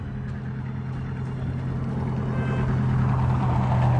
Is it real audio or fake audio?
real